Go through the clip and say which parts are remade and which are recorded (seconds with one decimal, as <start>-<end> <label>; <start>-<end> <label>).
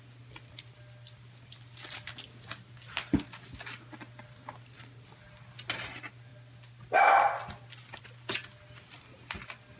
0.0-9.8 recorded